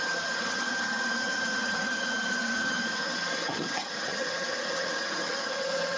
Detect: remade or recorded remade